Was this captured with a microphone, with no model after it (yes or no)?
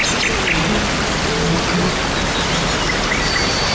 yes